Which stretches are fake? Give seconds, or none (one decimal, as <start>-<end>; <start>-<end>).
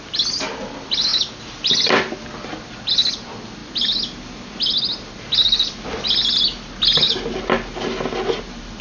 none